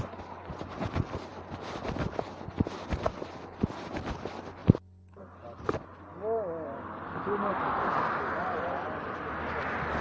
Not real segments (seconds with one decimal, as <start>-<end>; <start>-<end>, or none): none